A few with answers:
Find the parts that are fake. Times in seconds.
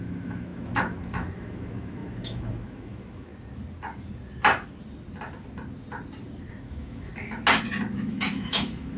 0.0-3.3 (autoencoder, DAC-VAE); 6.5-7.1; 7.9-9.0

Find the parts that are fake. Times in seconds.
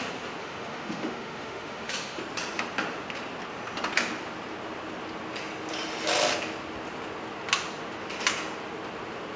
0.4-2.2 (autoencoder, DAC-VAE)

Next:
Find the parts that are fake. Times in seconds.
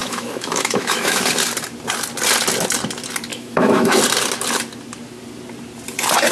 0.0-1.2 (autoencoder, DAC-VAE); 3.3-4.0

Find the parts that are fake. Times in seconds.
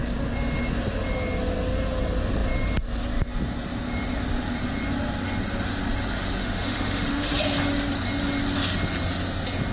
6.4-7.3 (autoencoder, DAC-VAE)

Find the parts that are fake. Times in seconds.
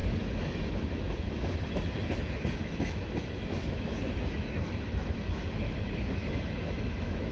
0.0-7.3 (autoencoder, DAC-VAE)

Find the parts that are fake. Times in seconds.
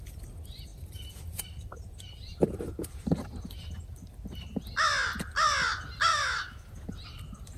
6.1-6.7 (autoencoder, DAC-VAE)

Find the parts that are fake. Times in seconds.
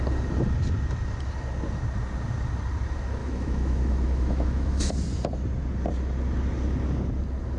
3.2-4.9 (autoencoder, DAC-VAE)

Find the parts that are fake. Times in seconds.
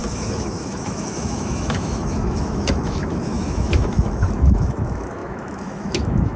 0.0-6.4 (autoencoder, DAC-VAE)